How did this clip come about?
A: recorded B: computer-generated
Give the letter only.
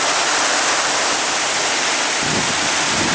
A